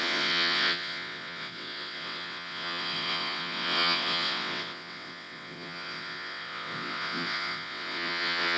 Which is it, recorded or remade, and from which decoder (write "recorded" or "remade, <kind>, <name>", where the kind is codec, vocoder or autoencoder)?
remade, vocoder, WaveNeXt